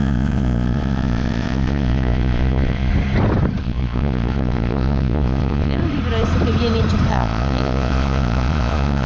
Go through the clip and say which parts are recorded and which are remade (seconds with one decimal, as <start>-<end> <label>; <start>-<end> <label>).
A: 0.0-2.9 remade; 2.9-3.6 recorded; 3.6-5.8 remade; 5.8-7.1 recorded; 7.1-9.1 remade